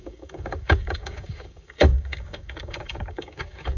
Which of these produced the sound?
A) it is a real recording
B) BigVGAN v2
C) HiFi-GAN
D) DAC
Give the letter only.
D